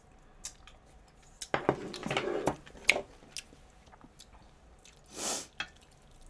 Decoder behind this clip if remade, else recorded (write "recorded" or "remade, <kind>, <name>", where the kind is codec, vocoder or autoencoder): recorded